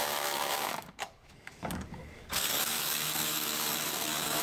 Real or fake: fake